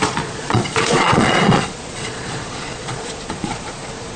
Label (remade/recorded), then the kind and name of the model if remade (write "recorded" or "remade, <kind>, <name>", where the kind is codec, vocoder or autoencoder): remade, vocoder, Vocos